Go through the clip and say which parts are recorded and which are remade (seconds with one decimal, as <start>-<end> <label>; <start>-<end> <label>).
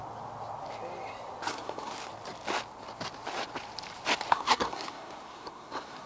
0.0-1.5 recorded; 1.5-1.9 remade; 1.9-4.3 recorded; 4.3-6.1 remade